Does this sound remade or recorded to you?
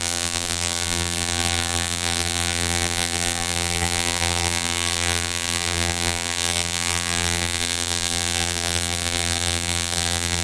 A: remade